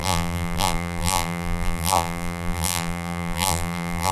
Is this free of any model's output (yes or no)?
no